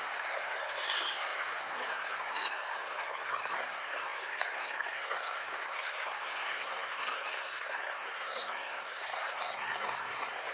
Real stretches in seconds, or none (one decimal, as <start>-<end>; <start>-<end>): none